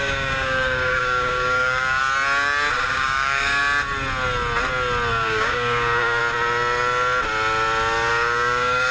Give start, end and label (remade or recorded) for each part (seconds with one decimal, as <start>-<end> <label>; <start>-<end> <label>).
0.0-2.0 remade; 2.0-2.9 recorded; 2.9-3.6 remade; 3.6-5.1 recorded; 5.1-6.2 remade; 6.2-8.1 recorded; 8.1-8.9 remade